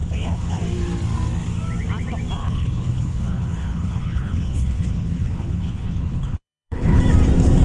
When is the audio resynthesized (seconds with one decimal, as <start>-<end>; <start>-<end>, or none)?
0.0-0.6; 2.4-7.0